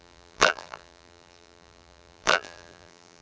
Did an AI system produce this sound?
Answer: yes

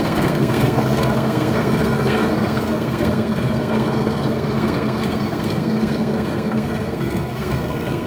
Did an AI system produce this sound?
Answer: yes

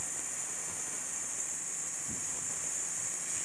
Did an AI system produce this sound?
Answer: no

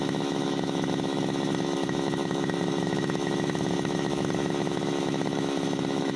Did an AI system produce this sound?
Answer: yes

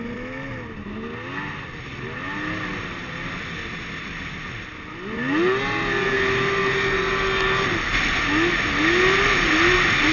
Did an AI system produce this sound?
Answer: no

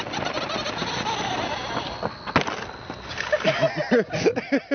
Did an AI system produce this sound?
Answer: no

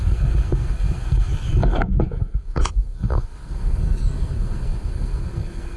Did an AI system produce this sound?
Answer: yes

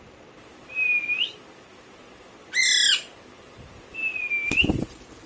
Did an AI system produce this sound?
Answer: no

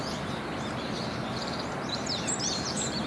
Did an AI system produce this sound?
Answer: yes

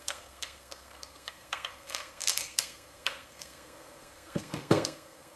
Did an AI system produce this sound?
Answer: yes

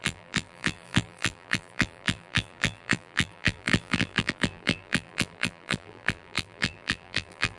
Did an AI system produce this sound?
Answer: yes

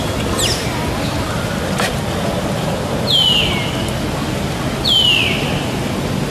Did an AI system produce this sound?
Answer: no